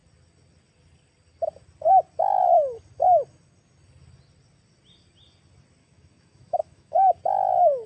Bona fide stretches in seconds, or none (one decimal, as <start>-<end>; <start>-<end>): 0.0-5.8; 7.2-7.9

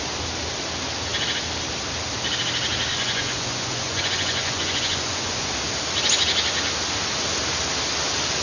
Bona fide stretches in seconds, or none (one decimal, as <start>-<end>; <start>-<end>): 0.0-2.9; 5.5-8.4

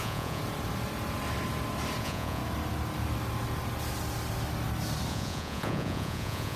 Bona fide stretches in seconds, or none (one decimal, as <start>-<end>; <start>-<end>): 0.4-2.0; 2.4-5.1